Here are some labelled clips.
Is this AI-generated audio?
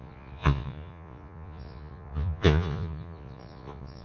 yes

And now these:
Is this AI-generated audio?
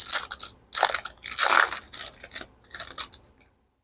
no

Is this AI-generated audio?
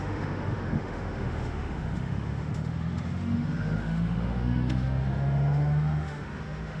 yes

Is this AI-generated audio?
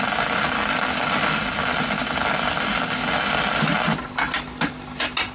no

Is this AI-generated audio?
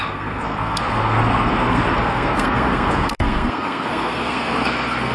yes